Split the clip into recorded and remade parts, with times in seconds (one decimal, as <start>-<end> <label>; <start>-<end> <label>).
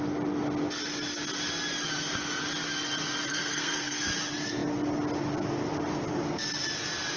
0.0-3.3 recorded; 3.3-4.1 remade; 4.1-7.2 recorded